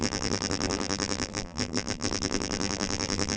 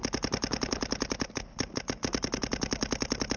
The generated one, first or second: first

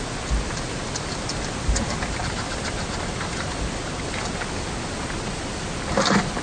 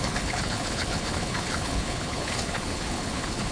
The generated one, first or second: second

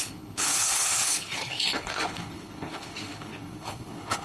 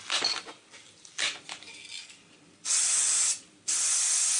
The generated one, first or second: first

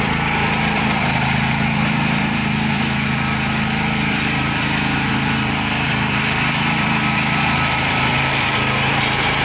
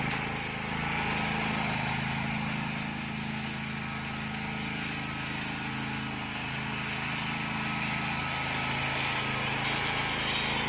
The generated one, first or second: first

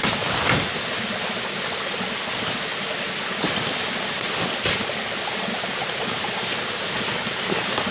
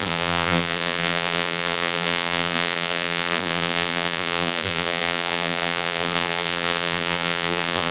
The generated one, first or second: second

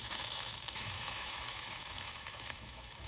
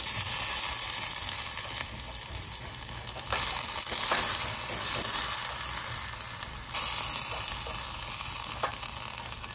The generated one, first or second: first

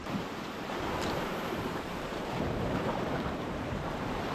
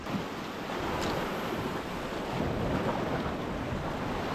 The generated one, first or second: first